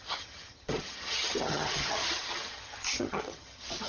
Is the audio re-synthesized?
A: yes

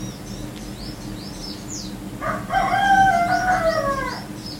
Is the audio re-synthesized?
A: no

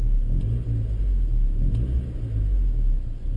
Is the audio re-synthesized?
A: no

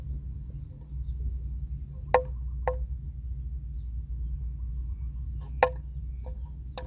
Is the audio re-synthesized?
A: no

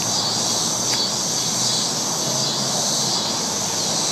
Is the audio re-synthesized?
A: no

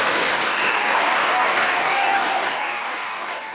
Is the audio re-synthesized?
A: yes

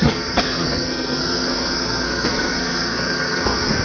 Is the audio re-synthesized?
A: yes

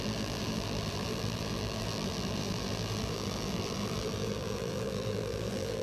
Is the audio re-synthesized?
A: yes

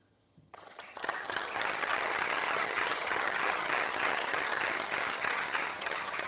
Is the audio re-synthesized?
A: yes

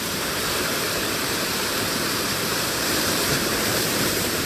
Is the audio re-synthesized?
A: yes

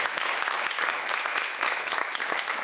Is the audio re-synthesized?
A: yes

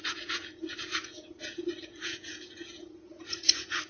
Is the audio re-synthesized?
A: yes